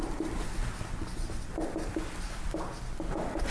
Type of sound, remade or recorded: recorded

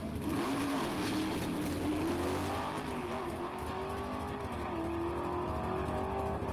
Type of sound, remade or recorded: recorded